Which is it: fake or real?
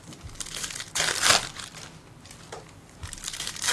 fake